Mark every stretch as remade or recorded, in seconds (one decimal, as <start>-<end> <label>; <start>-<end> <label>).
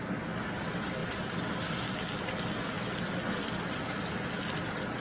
0.0-5.0 recorded